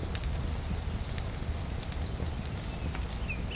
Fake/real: real